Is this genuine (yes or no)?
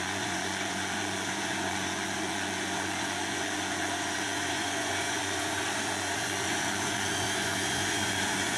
no